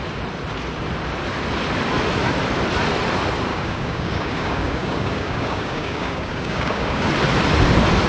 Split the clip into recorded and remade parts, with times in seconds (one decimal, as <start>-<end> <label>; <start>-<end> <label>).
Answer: 0.0-3.5 recorded; 3.5-7.1 remade; 7.1-8.1 recorded